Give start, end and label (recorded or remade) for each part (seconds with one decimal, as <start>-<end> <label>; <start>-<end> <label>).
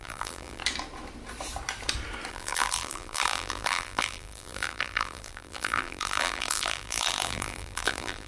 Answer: 0.0-0.6 remade; 0.6-2.3 recorded; 2.3-8.3 remade